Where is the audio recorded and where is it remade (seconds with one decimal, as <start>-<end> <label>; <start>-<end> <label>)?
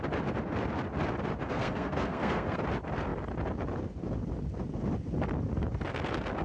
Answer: 0.0-1.4 recorded; 1.4-2.6 remade; 2.6-6.4 recorded